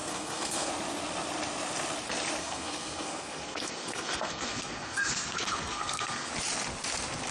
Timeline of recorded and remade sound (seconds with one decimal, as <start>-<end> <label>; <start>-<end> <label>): 0.0-0.7 remade; 0.7-2.4 recorded; 2.4-6.3 remade; 6.3-7.3 recorded